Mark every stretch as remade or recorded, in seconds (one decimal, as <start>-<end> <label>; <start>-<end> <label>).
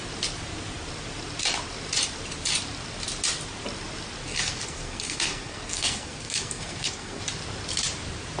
0.0-4.3 recorded; 4.3-7.2 remade; 7.2-8.4 recorded